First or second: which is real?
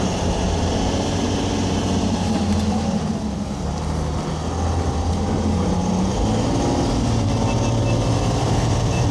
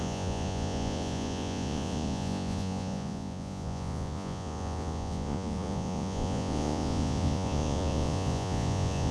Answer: first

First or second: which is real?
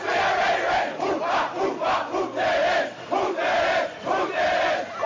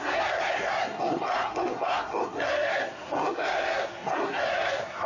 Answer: first